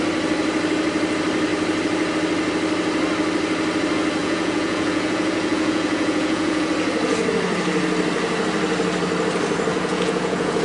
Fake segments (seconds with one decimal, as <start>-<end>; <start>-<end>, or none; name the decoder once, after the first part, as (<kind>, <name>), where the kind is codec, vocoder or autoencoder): 4.2-6.7 (vocoder, Vocos); 9.7-10.6